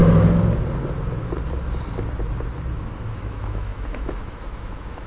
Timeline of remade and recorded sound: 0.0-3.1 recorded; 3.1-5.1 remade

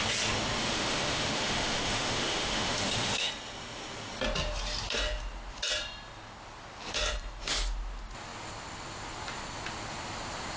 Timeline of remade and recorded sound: 0.0-0.6 recorded; 0.6-3.3 remade; 3.3-10.6 recorded

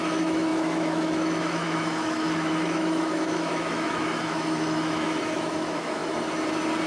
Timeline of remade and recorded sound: 0.0-6.0 remade; 6.0-6.9 recorded

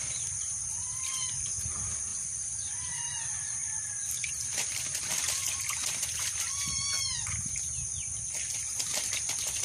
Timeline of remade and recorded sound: 0.0-9.6 recorded

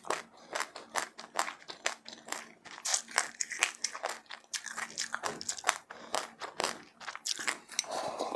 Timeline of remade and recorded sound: 0.0-8.4 recorded

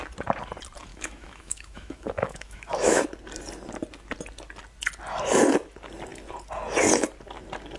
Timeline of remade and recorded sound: 0.0-0.9 recorded; 0.9-3.0 remade; 3.0-7.8 recorded